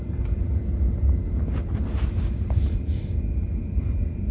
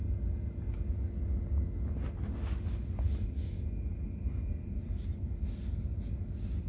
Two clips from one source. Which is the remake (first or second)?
first